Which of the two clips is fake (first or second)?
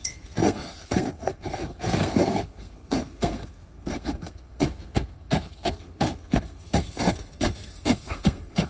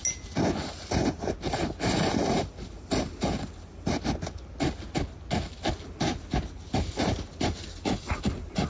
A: first